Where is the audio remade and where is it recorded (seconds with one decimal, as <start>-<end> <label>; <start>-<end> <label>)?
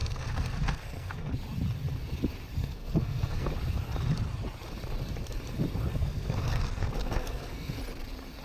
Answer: 0.0-1.3 remade; 1.3-2.6 recorded; 2.6-3.5 remade; 3.5-5.9 recorded; 5.9-7.8 remade; 7.8-8.4 recorded